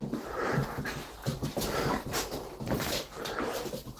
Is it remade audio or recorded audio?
remade